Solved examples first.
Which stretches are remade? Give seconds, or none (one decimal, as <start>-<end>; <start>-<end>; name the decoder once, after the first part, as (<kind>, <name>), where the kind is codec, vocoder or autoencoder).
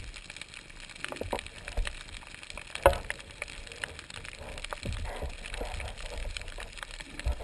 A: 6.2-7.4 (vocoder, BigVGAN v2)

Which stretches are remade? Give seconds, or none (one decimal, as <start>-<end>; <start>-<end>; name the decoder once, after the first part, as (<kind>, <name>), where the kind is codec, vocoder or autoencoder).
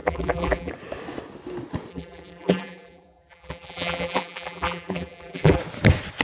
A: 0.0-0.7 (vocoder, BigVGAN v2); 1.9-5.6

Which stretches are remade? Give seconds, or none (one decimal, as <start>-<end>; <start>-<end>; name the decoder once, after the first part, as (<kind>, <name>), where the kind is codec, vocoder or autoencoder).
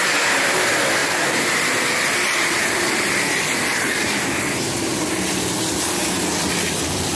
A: 1.0-5.3 (vocoder, BigVGAN v2)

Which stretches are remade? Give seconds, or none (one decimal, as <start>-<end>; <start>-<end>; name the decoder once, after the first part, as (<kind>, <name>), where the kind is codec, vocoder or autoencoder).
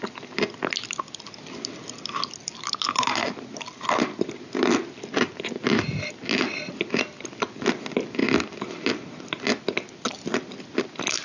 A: none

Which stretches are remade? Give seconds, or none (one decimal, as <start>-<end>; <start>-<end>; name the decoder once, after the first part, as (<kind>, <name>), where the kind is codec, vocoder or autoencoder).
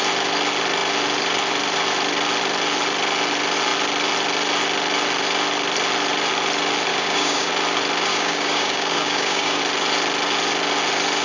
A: 6.9-7.5 (codec, DAC); 8.1-9.6